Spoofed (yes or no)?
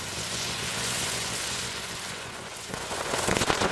yes